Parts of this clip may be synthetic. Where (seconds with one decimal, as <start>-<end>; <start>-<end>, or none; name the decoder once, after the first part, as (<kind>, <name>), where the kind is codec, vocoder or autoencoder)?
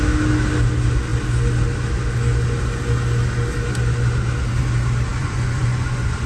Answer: 5.1-6.3 (vocoder, Vocos)